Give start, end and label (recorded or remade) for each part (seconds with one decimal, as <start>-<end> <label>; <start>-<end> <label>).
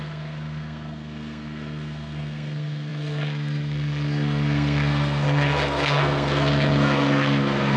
0.0-7.8 remade